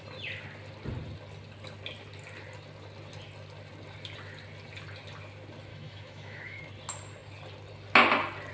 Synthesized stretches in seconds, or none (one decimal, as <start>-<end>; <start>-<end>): 5.7-6.6